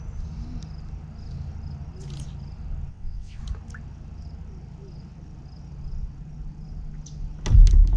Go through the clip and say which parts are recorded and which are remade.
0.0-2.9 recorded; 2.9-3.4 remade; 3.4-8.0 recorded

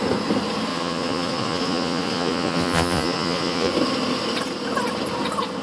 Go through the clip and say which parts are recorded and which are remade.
0.0-0.7 recorded; 0.7-3.7 remade; 3.7-5.6 recorded

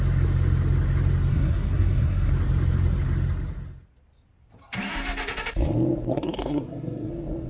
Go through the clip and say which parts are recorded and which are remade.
0.0-1.3 recorded; 1.3-2.3 remade; 2.3-6.1 recorded; 6.1-7.1 remade; 7.1-7.5 recorded